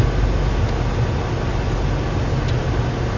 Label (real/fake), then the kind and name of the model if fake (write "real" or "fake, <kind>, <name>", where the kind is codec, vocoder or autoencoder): real